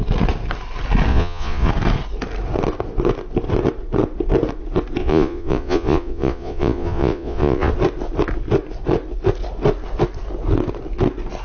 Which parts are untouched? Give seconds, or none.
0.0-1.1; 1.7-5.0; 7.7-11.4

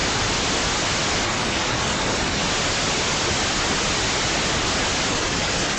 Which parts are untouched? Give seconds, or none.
0.0-1.2; 2.4-5.1

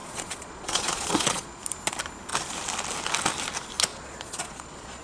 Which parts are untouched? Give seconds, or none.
1.6-3.9

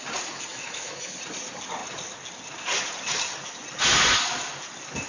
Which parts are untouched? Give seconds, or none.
0.0-0.5; 1.1-5.1

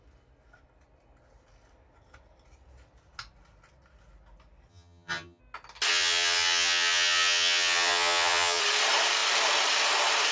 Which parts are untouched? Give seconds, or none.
0.0-4.7; 5.4-5.9; 8.6-10.3

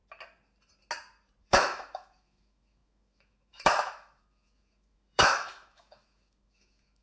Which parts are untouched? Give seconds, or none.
0.0-1.4

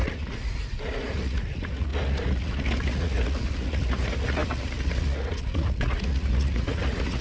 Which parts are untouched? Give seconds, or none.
none

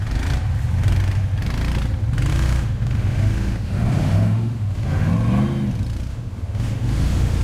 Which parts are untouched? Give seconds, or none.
0.0-2.3; 5.1-6.1